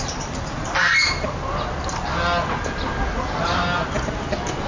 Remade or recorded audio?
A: recorded